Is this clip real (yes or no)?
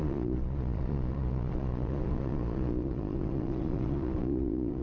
no